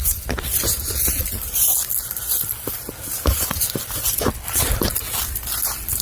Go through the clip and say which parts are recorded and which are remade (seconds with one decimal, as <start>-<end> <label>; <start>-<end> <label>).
0.0-6.0 recorded